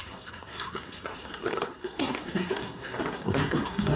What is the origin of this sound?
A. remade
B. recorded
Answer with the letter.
A